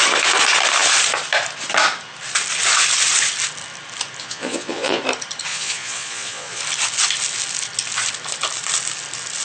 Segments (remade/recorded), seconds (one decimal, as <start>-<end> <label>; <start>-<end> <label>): 0.0-4.2 recorded; 4.2-5.0 remade; 5.0-5.5 recorded; 5.5-6.6 remade; 6.6-9.4 recorded